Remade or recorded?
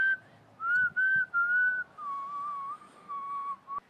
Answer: recorded